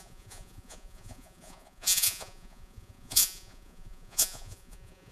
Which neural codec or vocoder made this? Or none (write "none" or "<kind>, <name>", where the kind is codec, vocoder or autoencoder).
vocoder, Vocos